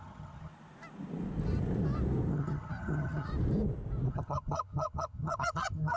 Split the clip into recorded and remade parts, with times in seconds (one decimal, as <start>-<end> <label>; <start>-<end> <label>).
0.0-0.5 remade; 0.5-2.3 recorded; 2.3-3.3 remade; 3.3-4.1 recorded; 4.1-6.0 remade